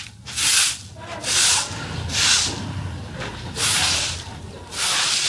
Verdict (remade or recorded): recorded